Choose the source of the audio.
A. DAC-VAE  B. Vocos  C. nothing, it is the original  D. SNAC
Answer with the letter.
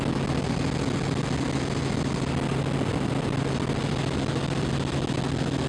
C